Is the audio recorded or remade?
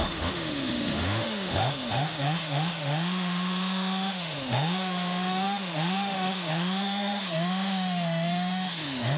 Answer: remade